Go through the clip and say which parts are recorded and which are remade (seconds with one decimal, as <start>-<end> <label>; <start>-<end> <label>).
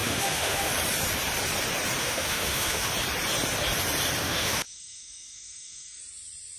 0.0-0.7 remade; 0.7-2.0 recorded; 2.0-2.9 remade; 2.9-4.2 recorded; 4.2-6.0 remade; 6.0-6.6 recorded